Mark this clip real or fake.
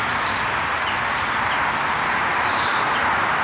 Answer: real